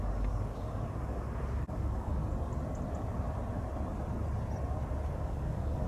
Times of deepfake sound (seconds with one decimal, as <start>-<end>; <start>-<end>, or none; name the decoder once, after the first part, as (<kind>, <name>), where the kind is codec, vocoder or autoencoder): 0.0-2.2 (codec, DAC); 5.1-5.9